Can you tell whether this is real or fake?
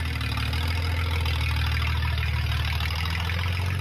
real